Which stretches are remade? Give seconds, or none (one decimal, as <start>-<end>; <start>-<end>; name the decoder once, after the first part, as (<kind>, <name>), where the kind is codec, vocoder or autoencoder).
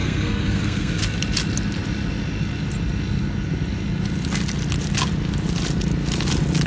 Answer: 0.0-1.0 (codec, SNAC)